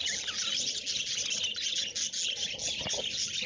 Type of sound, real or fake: real